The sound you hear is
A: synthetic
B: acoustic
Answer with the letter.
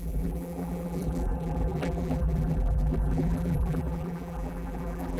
A